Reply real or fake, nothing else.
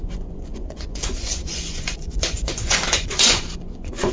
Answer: fake